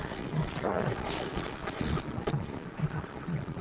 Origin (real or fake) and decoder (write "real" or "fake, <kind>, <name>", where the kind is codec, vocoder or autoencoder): fake, vocoder, Vocos